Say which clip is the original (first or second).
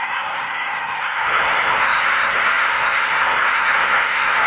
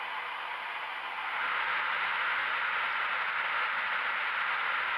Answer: second